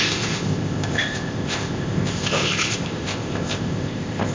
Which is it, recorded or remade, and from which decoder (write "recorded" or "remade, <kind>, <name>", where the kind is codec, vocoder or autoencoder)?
remade, codec, ZipCodec